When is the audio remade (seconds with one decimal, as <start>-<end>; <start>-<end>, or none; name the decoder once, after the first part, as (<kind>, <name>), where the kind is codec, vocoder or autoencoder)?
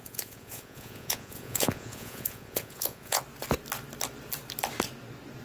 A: 0.0-3.2 (vocoder, Vocos)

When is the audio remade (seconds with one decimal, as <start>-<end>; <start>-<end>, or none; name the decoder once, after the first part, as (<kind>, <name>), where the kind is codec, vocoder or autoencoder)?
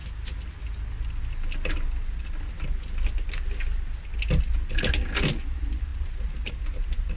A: none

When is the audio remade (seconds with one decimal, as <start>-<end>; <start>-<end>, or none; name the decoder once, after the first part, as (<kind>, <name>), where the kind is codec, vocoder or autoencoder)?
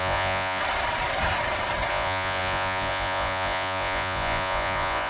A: 0.0-0.6 (vocoder, Vocos); 1.9-5.1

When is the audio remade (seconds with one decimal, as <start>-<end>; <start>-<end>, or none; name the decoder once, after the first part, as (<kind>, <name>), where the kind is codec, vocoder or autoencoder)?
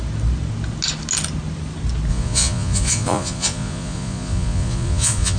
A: 2.1-5.4 (vocoder, Vocos)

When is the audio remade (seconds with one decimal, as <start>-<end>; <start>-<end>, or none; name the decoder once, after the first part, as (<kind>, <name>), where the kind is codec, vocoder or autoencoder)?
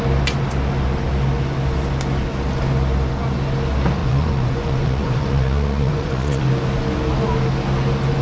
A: 4.0-6.4 (vocoder, Vocos)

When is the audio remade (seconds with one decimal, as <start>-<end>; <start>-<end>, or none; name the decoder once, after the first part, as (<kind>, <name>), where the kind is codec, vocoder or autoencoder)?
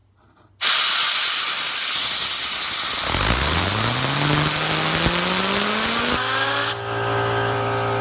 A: none